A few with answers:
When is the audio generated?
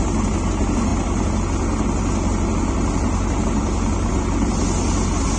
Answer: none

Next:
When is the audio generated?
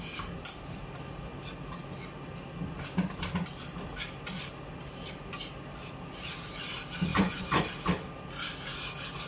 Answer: 7.1-7.6 (vocoder, Vocos)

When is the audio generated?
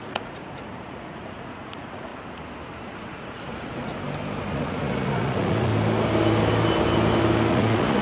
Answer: 0.0-2.1 (vocoder, Vocos); 2.8-3.9; 4.5-5.7; 7.5-8.0